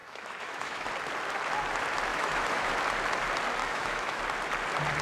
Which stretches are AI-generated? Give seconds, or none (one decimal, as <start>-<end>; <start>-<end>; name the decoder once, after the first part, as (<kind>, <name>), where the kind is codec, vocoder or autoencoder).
0.0-0.9 (autoencoder, DAC-VAE); 2.1-2.7; 3.6-4.2